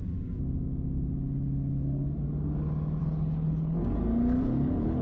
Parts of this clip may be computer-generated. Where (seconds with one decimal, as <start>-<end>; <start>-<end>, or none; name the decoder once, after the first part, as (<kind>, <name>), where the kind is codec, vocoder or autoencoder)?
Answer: 3.0-3.8 (codec, HILCodec); 4.4-5.0